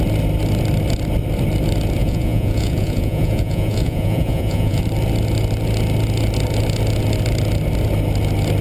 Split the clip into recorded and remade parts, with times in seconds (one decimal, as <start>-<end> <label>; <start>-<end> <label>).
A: 0.0-2.0 recorded; 2.0-4.8 remade; 4.8-8.6 recorded